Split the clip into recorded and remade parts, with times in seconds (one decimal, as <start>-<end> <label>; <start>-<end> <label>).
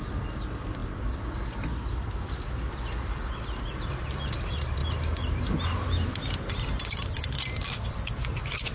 0.0-4.8 remade; 4.8-6.9 recorded; 6.9-8.7 remade